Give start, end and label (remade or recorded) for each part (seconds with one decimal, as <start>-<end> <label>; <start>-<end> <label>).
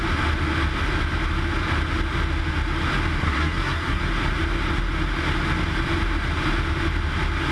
0.0-3.2 recorded; 3.2-4.0 remade; 4.0-7.5 recorded